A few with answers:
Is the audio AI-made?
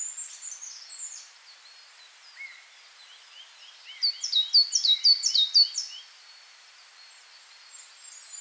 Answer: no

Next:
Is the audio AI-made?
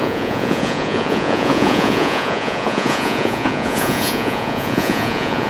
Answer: yes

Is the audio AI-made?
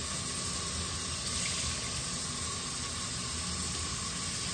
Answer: no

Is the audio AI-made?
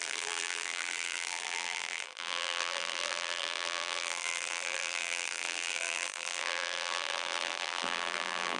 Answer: yes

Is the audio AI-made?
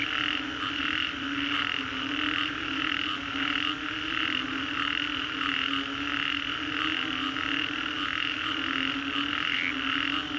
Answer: no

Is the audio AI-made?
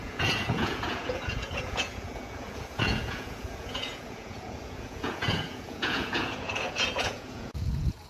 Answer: yes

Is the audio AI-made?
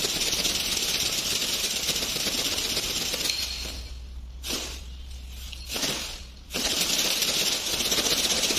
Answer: no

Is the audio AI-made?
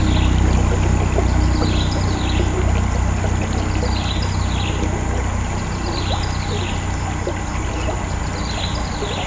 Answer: no